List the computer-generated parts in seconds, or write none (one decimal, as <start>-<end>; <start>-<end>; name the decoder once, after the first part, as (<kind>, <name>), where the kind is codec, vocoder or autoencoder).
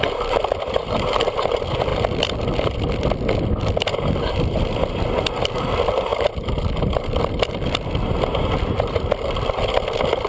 none